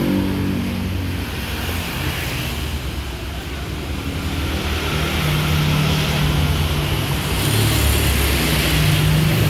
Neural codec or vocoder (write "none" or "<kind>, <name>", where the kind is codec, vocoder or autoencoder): none